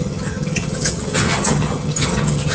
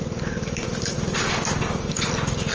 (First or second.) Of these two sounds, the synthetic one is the first